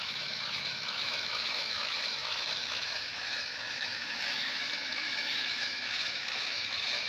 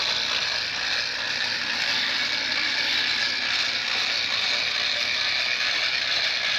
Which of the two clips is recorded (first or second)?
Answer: second